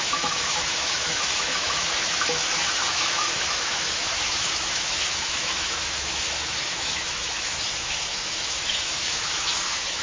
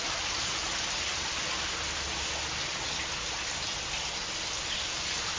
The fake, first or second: first